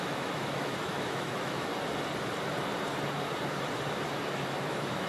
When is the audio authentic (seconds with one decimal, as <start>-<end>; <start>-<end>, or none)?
1.7-4.5